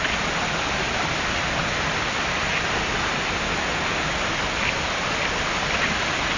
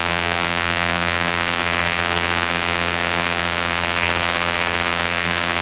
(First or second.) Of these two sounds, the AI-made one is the second